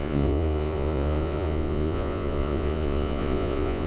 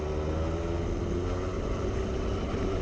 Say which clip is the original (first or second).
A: second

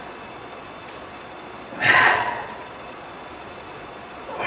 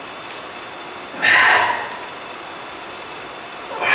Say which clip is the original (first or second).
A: second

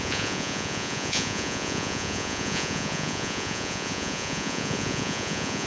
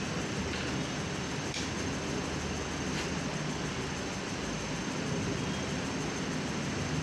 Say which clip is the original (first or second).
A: second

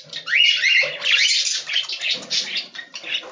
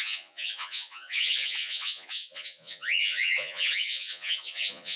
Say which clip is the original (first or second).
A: first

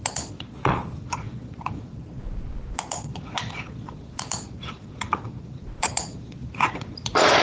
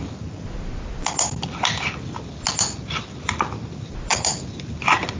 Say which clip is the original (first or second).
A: second